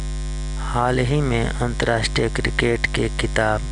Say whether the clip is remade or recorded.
recorded